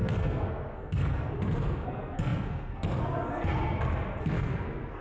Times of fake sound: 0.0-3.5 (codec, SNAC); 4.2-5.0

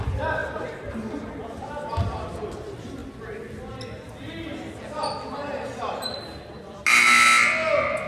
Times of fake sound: none

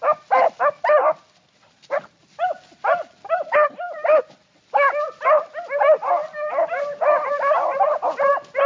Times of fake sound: none